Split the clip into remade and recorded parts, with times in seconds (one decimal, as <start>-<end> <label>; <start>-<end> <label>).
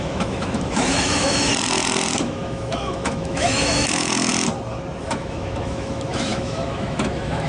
0.0-1.5 remade; 1.5-2.2 recorded; 2.2-4.3 remade; 4.3-5.0 recorded; 5.0-7.5 remade